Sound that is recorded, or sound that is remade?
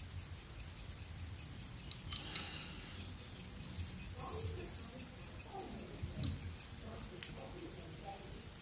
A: recorded